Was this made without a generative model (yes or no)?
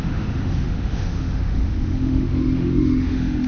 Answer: no